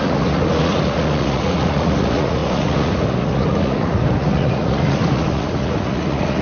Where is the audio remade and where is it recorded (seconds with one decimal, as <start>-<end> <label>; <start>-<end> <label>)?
0.0-6.4 remade